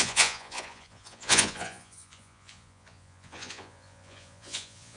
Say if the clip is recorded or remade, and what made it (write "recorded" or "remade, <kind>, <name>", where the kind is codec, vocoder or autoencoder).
remade, vocoder, Vocos